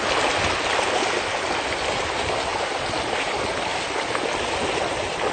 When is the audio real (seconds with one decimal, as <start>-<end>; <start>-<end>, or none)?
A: 0.0-5.3